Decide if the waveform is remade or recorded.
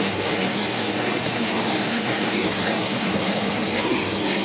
remade